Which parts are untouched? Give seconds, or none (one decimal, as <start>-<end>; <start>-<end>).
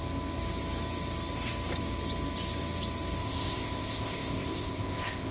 0.0-3.2